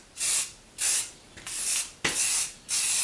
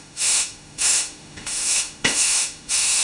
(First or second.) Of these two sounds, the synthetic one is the second